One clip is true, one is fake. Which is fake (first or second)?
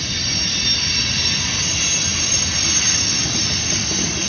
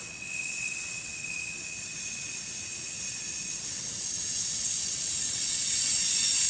second